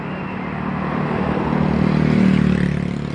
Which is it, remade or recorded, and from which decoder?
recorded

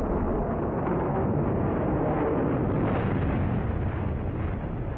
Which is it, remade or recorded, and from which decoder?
recorded